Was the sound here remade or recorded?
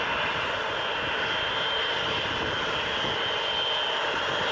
recorded